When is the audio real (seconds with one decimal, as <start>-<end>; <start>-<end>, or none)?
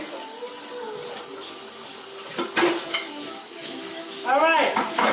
0.0-2.9